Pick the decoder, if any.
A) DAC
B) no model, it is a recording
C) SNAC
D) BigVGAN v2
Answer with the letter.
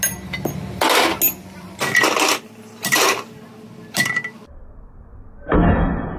B